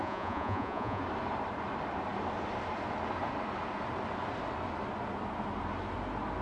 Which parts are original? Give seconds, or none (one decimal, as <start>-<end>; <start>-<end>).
1.0-6.4